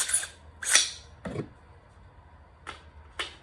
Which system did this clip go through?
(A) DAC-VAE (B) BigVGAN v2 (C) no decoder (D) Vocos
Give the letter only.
C